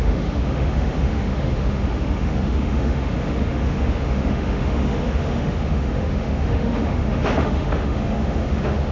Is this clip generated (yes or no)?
yes